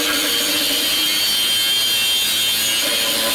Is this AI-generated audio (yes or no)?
no